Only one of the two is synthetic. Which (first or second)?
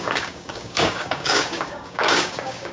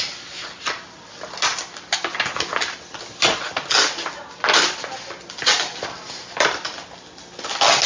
first